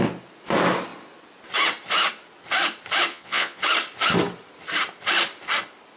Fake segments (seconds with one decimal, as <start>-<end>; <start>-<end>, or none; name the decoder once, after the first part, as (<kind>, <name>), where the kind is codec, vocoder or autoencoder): 3.1-3.6 (vocoder, Vocos)